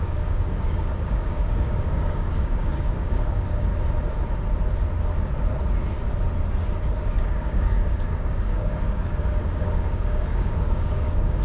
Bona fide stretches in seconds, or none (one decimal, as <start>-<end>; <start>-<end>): 3.7-7.1